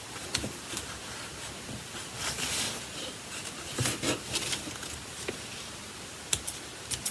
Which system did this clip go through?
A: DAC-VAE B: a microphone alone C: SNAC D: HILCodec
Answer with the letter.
B